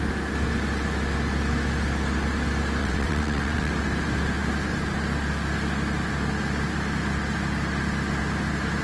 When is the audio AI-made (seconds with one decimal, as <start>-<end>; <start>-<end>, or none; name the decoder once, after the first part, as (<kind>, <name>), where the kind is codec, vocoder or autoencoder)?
2.8-3.7 (vocoder, WaveNeXt)